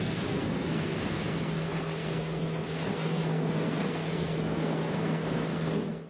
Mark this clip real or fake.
fake